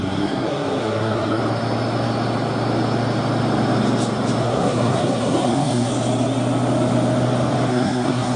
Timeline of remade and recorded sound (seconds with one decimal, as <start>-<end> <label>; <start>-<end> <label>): 0.0-1.4 remade; 1.4-4.4 recorded; 4.4-5.9 remade; 5.9-7.7 recorded; 7.7-8.4 remade